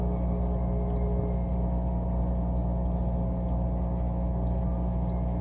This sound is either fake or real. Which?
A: real